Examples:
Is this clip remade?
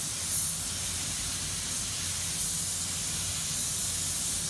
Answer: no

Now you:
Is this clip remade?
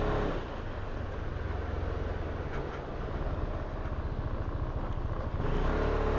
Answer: no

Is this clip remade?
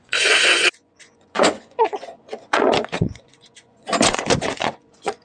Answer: yes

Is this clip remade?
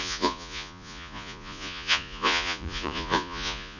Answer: yes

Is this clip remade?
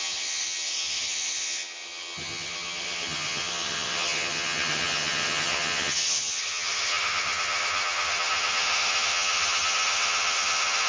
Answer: yes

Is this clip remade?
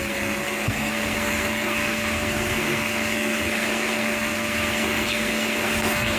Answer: yes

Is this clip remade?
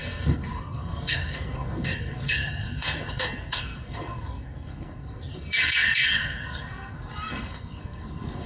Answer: yes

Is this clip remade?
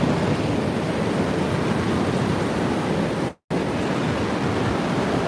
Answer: no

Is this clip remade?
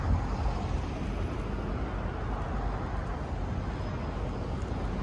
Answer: no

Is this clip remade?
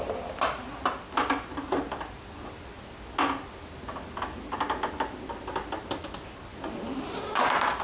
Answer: no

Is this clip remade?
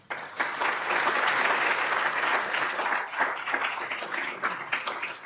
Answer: no